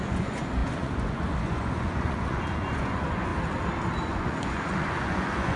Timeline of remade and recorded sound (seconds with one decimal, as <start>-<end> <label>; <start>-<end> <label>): 0.0-3.3 remade; 3.3-4.1 recorded; 4.1-5.6 remade